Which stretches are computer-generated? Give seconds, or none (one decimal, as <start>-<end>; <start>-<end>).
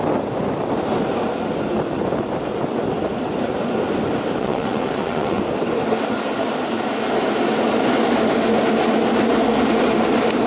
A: 4.4-5.4